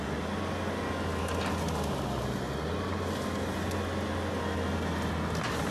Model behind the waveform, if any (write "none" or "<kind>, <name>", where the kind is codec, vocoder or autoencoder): none